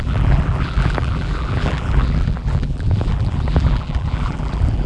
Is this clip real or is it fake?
fake